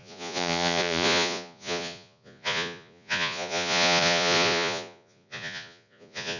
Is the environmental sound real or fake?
fake